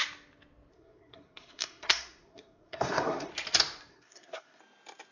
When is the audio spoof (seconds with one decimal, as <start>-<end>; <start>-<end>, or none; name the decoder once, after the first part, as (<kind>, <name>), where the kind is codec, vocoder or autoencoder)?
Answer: 0.7-3.3 (codec, SNAC); 3.9-4.6